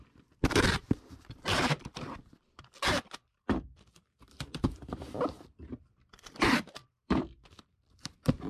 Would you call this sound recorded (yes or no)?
no